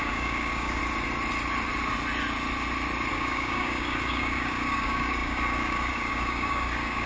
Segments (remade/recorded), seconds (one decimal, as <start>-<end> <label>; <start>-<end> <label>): 0.0-0.8 remade; 0.8-3.1 recorded; 3.1-7.1 remade